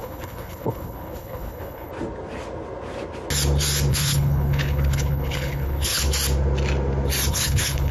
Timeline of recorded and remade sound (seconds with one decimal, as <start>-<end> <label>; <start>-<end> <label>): 0.0-1.9 remade; 1.9-3.9 recorded; 3.9-6.0 remade; 6.0-7.3 recorded; 7.3-7.9 remade